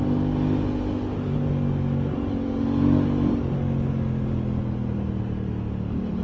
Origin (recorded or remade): recorded